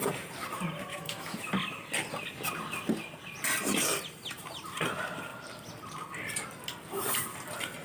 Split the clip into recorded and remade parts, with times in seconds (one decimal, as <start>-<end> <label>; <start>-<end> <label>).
0.0-0.9 recorded; 0.9-1.5 remade; 1.5-7.8 recorded